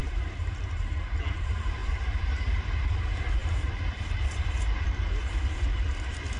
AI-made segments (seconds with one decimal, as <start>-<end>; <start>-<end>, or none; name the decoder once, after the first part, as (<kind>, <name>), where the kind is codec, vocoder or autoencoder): 0.0-1.0 (vocoder, BigVGAN v2); 1.8-3.0; 3.4-6.4